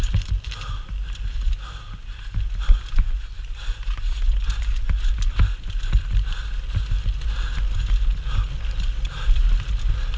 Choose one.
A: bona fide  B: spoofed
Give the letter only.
A